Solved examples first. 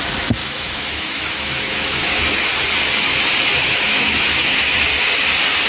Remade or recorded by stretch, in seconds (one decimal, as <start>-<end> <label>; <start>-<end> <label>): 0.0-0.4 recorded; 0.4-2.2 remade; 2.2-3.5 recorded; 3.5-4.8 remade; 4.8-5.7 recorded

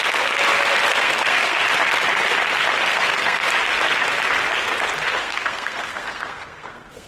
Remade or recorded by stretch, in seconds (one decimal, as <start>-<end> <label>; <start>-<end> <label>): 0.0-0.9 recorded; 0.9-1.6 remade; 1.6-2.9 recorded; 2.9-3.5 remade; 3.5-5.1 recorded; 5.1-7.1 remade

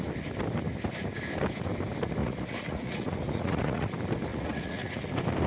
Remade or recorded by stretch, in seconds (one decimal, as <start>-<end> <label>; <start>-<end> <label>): 0.0-2.2 recorded; 2.2-3.9 remade; 3.9-4.3 recorded; 4.3-5.0 remade; 5.0-5.5 recorded

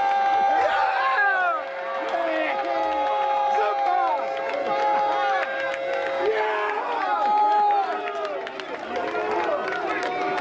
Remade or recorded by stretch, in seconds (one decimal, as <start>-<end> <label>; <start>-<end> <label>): 0.0-10.4 recorded